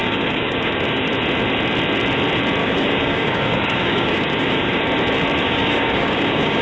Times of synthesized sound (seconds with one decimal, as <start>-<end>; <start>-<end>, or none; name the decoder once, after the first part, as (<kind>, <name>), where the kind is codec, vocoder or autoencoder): 0.0-1.1 (codec, DAC); 2.6-4.8; 5.4-6.6